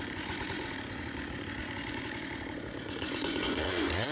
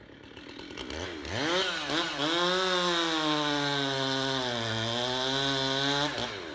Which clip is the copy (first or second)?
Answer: first